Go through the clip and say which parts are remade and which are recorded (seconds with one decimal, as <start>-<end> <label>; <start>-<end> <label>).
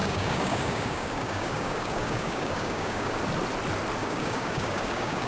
0.0-3.2 remade; 3.2-4.0 recorded; 4.0-5.3 remade